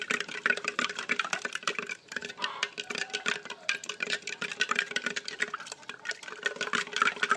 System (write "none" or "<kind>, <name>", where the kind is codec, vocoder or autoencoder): none